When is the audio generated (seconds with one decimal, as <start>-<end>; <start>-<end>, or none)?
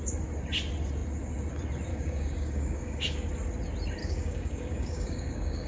1.9-3.3; 4.0-5.7